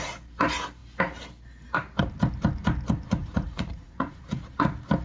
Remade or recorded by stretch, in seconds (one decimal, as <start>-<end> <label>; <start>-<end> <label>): 0.0-3.2 recorded; 3.2-4.2 remade; 4.2-5.0 recorded

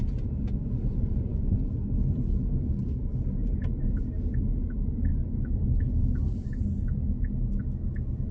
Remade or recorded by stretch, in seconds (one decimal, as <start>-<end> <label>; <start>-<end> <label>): 0.0-8.3 recorded

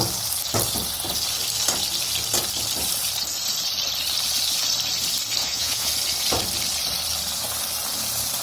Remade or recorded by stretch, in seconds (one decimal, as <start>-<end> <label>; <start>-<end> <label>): 0.0-5.4 recorded; 5.4-5.9 remade; 5.9-8.4 recorded

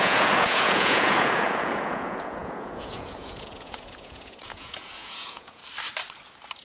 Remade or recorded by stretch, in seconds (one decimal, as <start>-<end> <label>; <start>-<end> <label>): 0.0-5.6 remade; 5.6-6.6 recorded

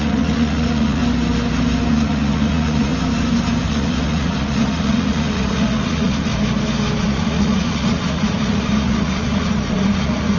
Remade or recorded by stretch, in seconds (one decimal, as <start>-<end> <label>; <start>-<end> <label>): 0.0-1.0 remade; 1.0-1.9 recorded; 1.9-2.9 remade; 2.9-3.7 recorded; 3.7-6.3 remade; 6.3-7.0 recorded; 7.0-10.4 remade

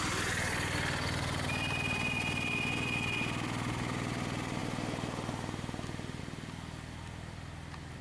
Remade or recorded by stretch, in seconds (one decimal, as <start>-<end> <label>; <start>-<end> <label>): 0.0-8.0 recorded